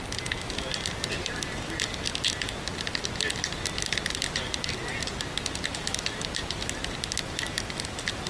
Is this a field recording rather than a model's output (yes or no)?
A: yes